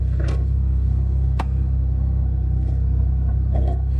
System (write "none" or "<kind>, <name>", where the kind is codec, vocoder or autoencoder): codec, SNAC